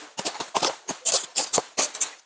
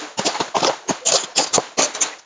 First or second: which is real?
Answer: second